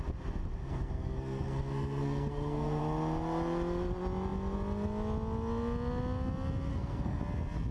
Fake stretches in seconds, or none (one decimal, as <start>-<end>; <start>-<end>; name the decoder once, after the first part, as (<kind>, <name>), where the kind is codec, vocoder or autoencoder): 0.6-2.8 (codec, SNAC); 6.7-7.2